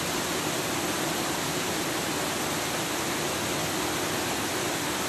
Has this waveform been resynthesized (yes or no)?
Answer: no